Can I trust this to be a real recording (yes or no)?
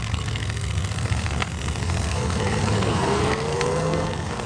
no